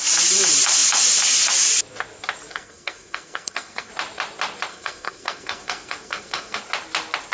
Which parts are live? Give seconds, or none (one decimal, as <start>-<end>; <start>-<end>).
0.0-2.5; 3.9-4.7; 6.6-7.3